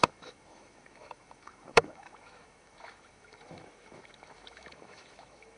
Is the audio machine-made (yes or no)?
yes